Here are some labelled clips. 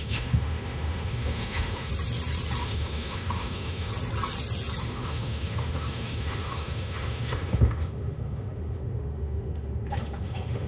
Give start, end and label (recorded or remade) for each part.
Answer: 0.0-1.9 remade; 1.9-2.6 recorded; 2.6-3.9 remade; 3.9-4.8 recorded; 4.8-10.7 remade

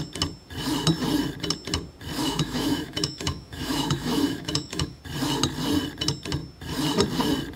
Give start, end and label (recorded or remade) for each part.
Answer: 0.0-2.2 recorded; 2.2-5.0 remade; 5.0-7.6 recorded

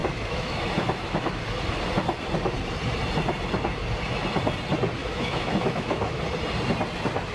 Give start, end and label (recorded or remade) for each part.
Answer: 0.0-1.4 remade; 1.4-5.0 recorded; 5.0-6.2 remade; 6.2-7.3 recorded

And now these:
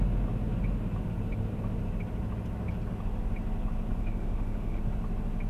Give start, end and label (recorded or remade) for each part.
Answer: 0.0-4.0 recorded; 4.0-4.8 remade; 4.8-5.5 recorded

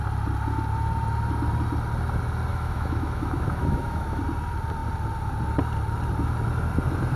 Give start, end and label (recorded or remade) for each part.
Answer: 0.0-2.5 recorded; 2.5-4.2 remade; 4.2-7.2 recorded

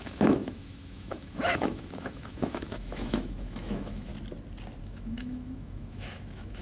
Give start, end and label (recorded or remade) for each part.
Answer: 0.0-4.1 remade; 4.1-4.8 recorded; 4.8-6.6 remade